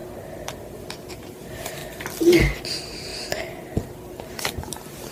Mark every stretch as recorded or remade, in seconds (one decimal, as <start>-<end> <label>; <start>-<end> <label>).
0.0-1.1 recorded; 1.1-1.8 remade; 1.8-2.6 recorded; 2.6-3.1 remade; 3.1-4.4 recorded; 4.4-5.1 remade